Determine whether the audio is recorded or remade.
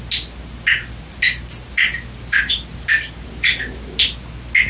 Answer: recorded